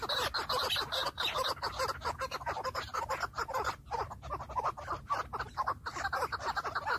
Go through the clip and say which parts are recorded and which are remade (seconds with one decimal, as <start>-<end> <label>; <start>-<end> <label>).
0.0-7.0 recorded